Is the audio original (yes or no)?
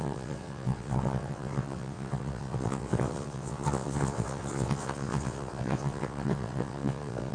no